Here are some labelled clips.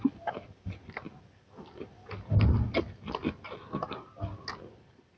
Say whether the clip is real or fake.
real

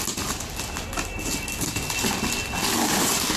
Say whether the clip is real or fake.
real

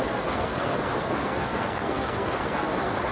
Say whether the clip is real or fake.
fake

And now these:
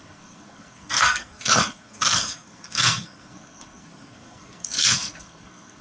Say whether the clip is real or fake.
fake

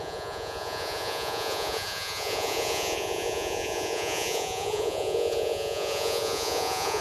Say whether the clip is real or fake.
fake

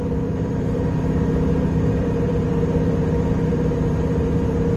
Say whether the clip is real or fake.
fake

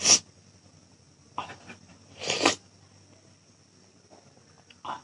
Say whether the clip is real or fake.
real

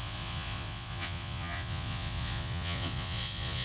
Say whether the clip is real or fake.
fake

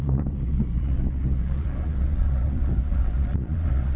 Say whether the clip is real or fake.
fake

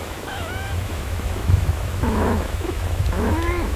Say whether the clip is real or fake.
fake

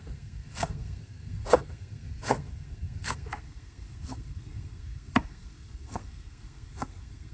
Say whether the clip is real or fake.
fake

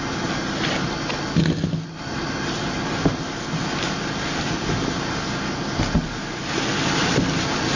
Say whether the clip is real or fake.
real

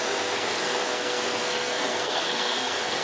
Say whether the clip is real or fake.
fake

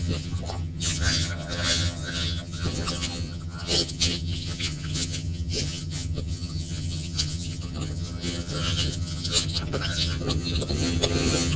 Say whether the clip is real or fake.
fake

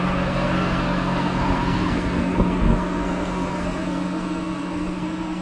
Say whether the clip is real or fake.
fake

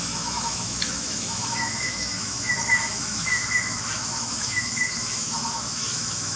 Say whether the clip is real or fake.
fake